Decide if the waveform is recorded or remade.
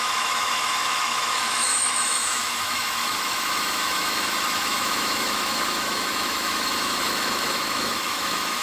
remade